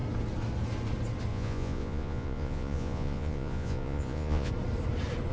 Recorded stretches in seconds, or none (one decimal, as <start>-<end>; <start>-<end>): 0.0-1.3; 4.5-5.3